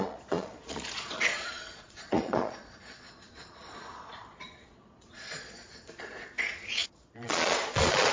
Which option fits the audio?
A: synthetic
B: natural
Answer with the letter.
A